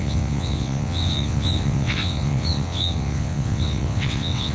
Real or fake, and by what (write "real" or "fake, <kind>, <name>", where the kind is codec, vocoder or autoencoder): fake, vocoder, WaveNeXt